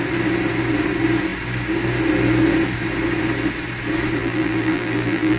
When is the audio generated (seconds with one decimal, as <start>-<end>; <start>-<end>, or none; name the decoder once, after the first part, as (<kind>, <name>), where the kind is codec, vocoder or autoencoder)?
4.2-5.4 (vocoder, BigVGAN v2)